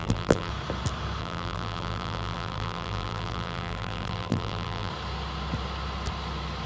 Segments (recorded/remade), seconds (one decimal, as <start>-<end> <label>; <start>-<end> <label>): 0.0-0.5 remade; 0.5-1.2 recorded; 1.2-4.9 remade; 4.9-6.7 recorded